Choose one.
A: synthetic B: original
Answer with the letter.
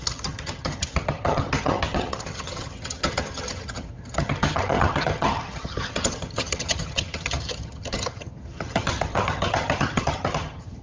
A